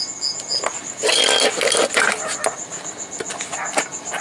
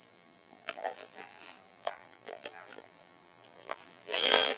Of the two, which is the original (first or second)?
first